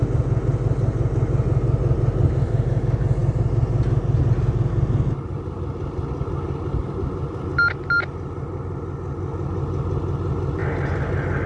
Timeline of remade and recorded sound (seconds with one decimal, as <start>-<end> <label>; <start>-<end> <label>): 0.0-11.5 recorded

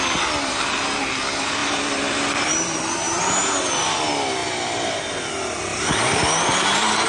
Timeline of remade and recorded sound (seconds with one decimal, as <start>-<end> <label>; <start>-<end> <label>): 0.0-1.6 recorded; 1.6-2.8 remade; 2.8-4.4 recorded; 4.4-5.1 remade; 5.1-5.7 recorded; 5.7-7.1 remade

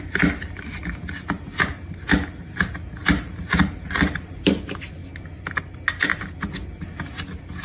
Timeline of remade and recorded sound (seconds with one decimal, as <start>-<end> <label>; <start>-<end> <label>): 0.0-6.1 recorded; 6.1-6.8 remade; 6.8-7.6 recorded

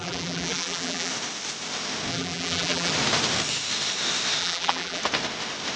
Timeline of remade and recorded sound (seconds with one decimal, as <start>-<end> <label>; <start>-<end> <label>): 0.0-1.1 remade; 1.1-2.1 recorded; 2.1-2.9 remade; 2.9-4.4 recorded; 4.4-5.0 remade; 5.0-5.8 recorded